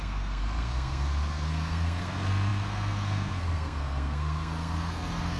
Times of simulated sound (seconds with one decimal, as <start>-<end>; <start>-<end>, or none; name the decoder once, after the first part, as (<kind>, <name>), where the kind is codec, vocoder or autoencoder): 0.0-5.4 (codec, SNAC)